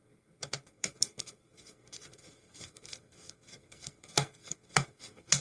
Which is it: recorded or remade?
remade